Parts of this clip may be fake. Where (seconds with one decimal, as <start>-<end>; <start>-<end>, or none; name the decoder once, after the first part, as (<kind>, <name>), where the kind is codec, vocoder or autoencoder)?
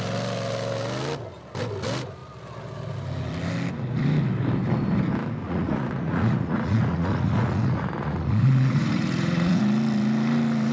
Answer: 5.4-9.6 (vocoder, Vocos)